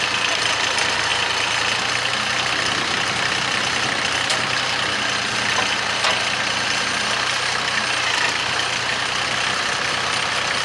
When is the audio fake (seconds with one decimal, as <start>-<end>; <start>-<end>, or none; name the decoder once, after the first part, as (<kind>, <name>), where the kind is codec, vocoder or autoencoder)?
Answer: none